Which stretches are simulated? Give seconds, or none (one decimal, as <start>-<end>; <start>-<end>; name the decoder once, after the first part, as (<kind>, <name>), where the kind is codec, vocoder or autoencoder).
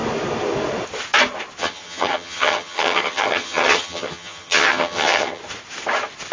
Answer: 1.6-5.4 (vocoder, HiFi-GAN)